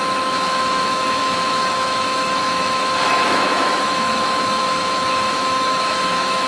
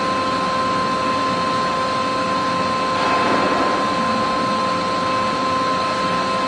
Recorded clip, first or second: second